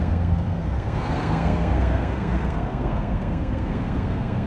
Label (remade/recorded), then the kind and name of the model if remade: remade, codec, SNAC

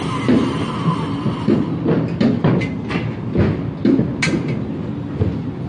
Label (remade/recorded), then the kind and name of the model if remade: recorded